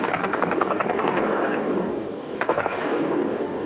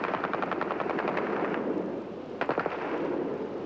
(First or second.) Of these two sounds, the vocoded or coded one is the first